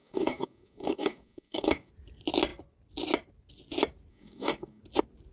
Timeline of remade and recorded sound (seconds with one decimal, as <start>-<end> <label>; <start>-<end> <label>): 0.0-1.9 remade; 1.9-4.1 recorded; 4.1-4.8 remade; 4.8-5.3 recorded